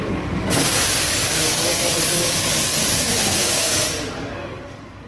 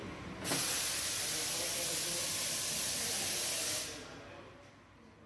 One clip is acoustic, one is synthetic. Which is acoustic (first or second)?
second